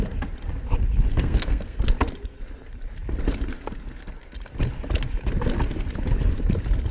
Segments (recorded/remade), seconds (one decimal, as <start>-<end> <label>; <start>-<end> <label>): 0.0-1.1 recorded; 1.1-1.8 remade; 1.8-6.9 recorded

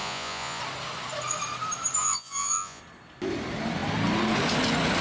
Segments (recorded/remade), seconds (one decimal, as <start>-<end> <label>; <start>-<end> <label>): 0.0-0.6 remade; 0.6-2.0 recorded; 2.0-2.8 remade; 2.8-5.0 recorded

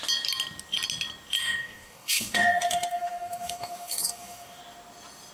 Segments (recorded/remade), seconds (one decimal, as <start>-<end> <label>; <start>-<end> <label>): 0.0-1.4 recorded; 1.4-4.6 remade; 4.6-5.3 recorded

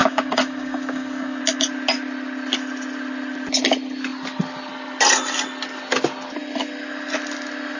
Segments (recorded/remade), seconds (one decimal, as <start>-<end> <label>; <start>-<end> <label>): 0.0-1.4 remade; 1.4-7.8 recorded

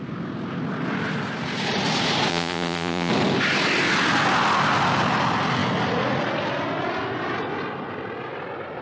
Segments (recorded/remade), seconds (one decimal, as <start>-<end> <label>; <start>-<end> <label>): 0.0-2.3 recorded; 2.3-3.1 remade; 3.1-8.8 recorded

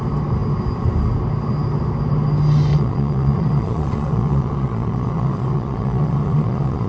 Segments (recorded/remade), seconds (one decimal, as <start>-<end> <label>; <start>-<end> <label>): 0.0-2.7 recorded; 2.7-6.9 remade